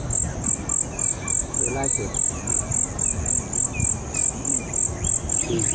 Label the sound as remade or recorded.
recorded